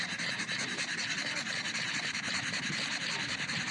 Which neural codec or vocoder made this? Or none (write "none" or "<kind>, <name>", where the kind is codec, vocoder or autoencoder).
none